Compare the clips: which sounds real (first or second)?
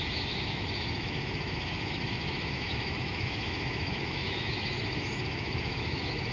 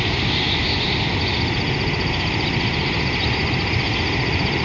second